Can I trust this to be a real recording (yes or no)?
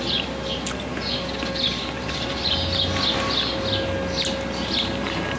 yes